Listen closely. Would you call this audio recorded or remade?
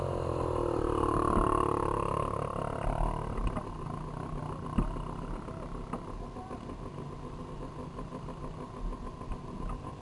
recorded